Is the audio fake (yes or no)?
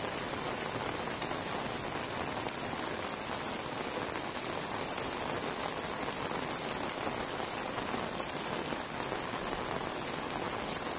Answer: no